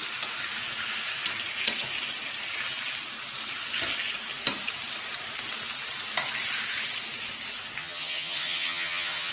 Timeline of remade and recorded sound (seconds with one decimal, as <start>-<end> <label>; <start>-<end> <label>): 0.0-7.8 recorded; 7.8-9.3 remade